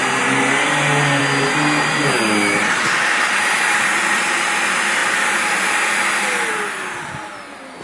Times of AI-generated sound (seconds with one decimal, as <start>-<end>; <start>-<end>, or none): none